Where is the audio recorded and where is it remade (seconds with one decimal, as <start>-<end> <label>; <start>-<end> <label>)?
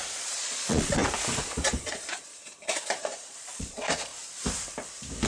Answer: 0.0-1.0 remade; 1.0-1.9 recorded; 1.9-2.3 remade; 2.3-3.0 recorded; 3.0-4.1 remade; 4.1-5.3 recorded